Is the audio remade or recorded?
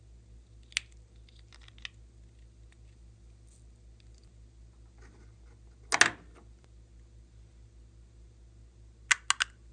recorded